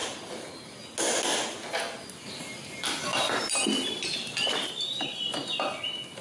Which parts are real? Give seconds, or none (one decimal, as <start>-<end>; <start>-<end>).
0.0-3.1; 4.2-6.2